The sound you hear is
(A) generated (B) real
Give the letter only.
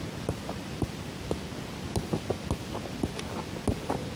B